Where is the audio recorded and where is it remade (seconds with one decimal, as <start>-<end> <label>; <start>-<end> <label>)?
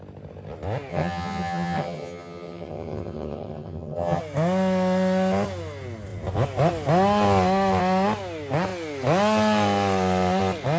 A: 0.0-0.9 recorded; 0.9-4.2 remade; 4.2-10.8 recorded